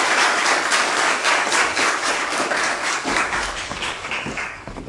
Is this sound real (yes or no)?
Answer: no